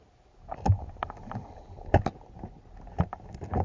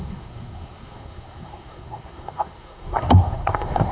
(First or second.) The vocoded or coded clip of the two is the second